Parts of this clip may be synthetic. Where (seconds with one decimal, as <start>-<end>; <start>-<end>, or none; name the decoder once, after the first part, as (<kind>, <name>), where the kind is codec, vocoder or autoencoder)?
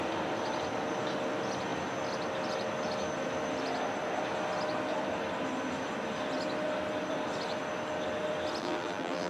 8.6-9.3 (vocoder, BigVGAN v2)